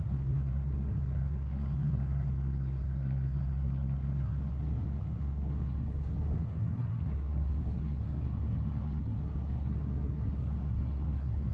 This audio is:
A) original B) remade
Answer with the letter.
B